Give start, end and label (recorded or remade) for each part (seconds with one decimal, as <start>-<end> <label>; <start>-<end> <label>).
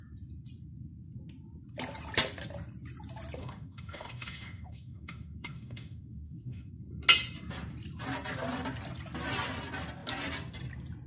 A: 0.0-3.4 recorded; 3.4-6.7 remade; 6.7-11.1 recorded